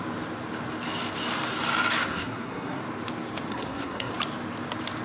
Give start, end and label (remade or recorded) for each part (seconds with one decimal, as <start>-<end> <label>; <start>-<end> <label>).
0.0-2.1 recorded; 2.1-2.8 remade; 2.8-3.5 recorded; 3.5-4.1 remade; 4.1-5.0 recorded